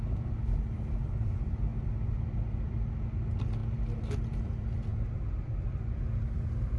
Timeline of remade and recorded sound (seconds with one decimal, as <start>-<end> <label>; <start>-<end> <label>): 0.0-1.7 remade; 1.7-2.5 recorded; 2.5-3.6 remade; 3.6-4.4 recorded; 4.4-4.9 remade; 4.9-5.4 recorded; 5.4-6.8 remade